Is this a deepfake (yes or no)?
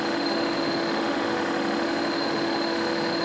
yes